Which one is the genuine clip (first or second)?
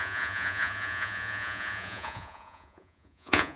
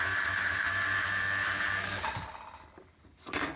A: second